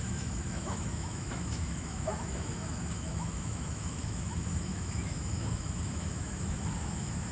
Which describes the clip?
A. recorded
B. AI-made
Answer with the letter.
B